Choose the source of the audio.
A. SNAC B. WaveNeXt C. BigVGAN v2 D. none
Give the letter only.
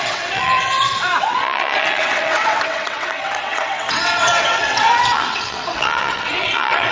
B